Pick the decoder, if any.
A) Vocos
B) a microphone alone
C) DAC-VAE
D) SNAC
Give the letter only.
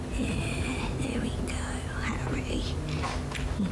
B